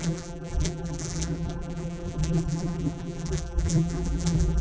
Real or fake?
fake